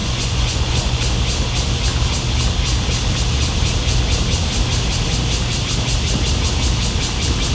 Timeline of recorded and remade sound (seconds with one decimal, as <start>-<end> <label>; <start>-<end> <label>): 0.0-1.0 remade; 1.0-7.5 recorded